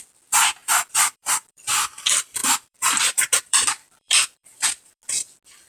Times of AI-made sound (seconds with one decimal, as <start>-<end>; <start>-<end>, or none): 0.6-1.7; 2.4-5.0